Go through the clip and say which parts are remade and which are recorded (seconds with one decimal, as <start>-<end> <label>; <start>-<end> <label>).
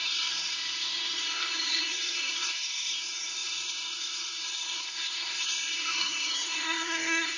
0.0-7.4 remade